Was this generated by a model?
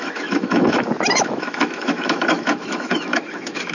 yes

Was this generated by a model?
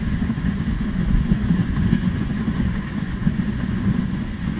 yes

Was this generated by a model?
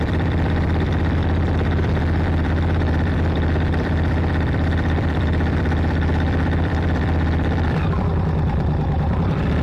yes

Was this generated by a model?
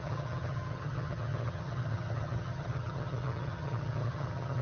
yes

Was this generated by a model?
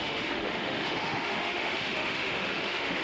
yes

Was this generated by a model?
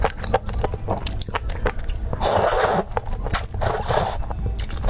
no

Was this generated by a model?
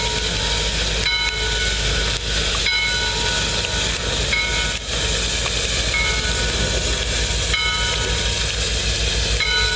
no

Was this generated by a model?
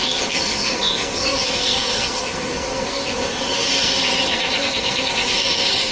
yes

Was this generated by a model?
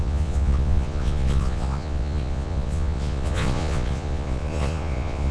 yes